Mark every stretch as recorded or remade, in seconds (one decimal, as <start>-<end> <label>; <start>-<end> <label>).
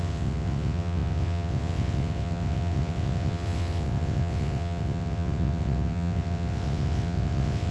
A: 0.0-7.7 remade